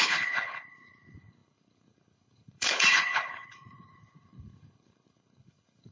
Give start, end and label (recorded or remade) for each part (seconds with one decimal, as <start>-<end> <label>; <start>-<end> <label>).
0.0-5.9 remade